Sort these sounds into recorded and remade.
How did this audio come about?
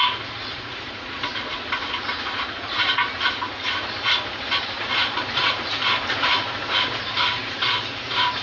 remade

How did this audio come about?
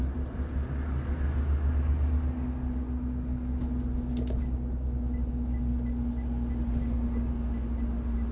recorded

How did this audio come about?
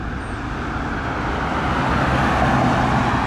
recorded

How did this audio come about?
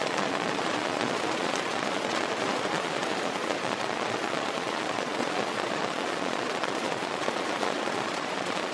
remade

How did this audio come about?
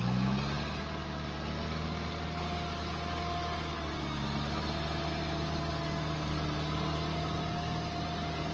recorded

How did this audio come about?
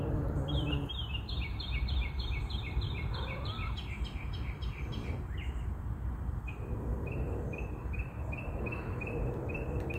remade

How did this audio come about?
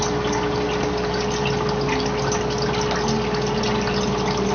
recorded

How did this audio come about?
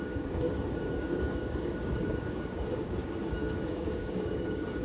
remade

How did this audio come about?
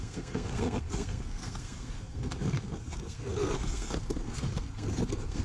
remade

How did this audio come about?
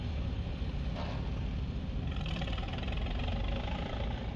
recorded